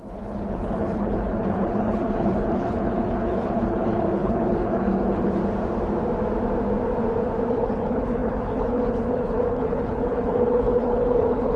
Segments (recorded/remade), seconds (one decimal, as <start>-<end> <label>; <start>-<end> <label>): 0.0-5.4 remade; 5.4-7.5 recorded; 7.5-11.6 remade